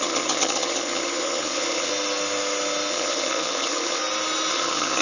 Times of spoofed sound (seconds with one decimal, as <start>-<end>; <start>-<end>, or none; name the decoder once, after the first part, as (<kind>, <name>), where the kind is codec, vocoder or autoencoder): 0.0-1.9 (vocoder, HiFi-GAN); 2.9-4.0; 4.5-5.0

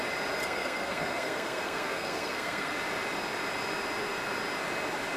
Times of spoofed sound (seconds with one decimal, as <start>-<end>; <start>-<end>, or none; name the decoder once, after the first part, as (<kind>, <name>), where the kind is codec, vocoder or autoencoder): 0.4-2.7 (codec, SNAC)

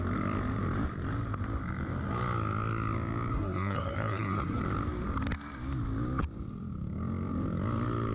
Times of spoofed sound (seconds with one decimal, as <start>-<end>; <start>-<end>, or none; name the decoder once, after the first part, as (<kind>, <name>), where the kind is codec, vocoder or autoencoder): 3.3-4.6 (codec, SNAC)

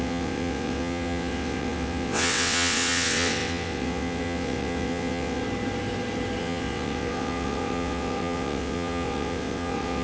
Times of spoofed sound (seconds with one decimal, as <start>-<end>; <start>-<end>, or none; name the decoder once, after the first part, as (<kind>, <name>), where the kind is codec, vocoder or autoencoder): 0.0-5.4 (vocoder, WaveNeXt); 6.4-10.0

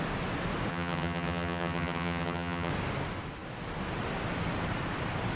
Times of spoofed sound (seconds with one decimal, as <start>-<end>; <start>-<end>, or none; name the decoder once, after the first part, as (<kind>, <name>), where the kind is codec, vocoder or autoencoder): 0.7-2.7 (vocoder, HiFi-GAN)

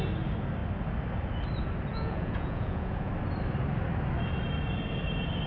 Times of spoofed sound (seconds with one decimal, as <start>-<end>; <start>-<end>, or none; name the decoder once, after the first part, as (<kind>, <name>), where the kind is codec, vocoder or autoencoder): 1.9-3.1 (vocoder, Vocos)

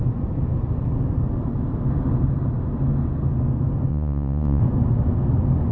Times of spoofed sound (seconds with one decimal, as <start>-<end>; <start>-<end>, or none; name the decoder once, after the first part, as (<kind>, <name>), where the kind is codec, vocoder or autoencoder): 3.9-4.6 (vocoder, Vocos)